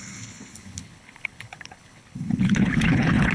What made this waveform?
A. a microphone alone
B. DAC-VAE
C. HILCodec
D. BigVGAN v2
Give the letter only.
C